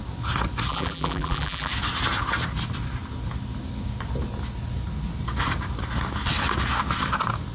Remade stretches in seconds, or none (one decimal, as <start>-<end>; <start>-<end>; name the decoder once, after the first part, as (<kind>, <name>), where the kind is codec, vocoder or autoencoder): 0.7-1.7 (vocoder, BigVGAN v2)